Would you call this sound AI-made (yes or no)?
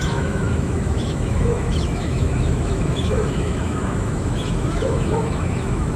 yes